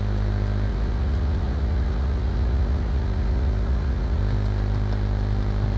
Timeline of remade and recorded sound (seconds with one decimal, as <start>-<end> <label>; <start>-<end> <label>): 0.0-0.7 recorded; 0.7-4.2 remade; 4.2-5.8 recorded